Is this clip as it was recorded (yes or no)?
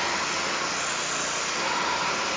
yes